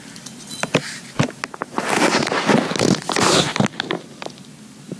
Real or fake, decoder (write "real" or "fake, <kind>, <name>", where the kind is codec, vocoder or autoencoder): real